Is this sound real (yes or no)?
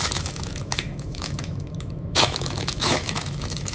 no